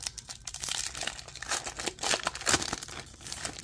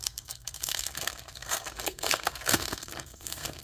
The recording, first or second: first